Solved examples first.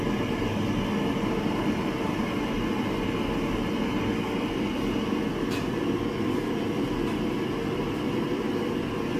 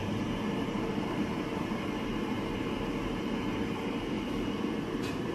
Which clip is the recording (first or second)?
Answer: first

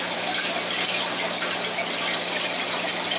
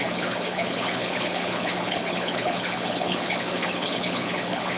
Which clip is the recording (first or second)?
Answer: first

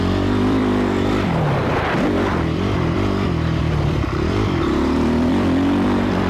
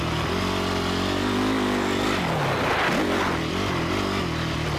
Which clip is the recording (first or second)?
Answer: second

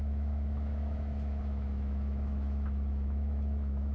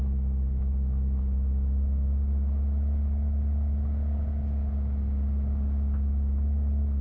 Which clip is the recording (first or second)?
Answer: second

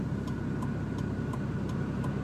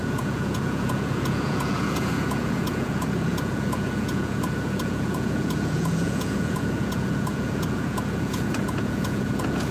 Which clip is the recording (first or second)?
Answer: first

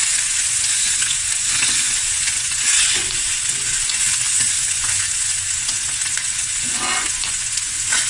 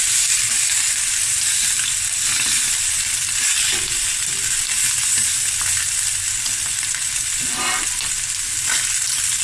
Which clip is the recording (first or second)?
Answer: second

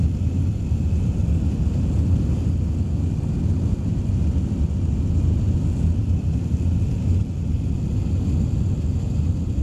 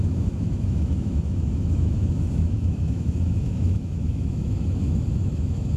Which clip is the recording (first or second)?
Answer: first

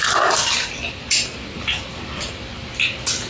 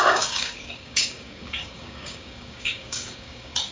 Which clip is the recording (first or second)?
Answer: first